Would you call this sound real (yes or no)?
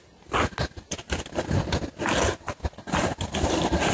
yes